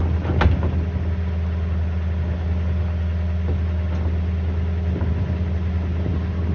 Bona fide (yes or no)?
yes